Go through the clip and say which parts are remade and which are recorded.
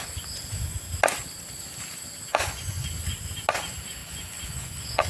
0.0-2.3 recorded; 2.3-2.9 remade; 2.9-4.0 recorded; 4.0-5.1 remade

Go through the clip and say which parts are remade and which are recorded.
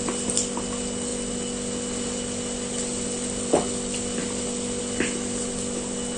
0.0-6.2 recorded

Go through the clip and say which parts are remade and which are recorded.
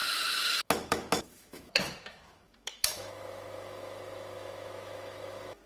0.0-5.7 remade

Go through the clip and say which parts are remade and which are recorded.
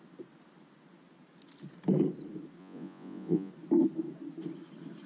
0.0-2.6 recorded; 2.6-3.5 remade; 3.5-5.1 recorded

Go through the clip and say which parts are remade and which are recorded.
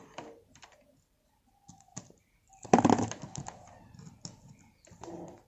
0.0-5.5 recorded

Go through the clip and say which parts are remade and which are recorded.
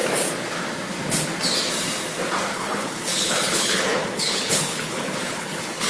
0.0-2.5 recorded; 2.5-5.9 remade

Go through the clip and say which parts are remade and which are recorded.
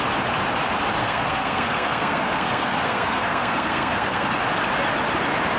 0.0-1.0 recorded; 1.0-4.4 remade; 4.4-5.6 recorded